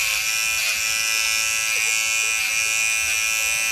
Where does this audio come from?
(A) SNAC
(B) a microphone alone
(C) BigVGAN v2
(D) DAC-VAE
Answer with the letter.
B